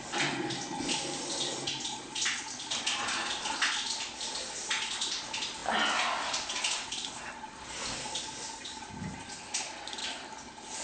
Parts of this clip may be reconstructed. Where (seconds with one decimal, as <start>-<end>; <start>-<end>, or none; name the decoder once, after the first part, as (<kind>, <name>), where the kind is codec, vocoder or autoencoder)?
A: none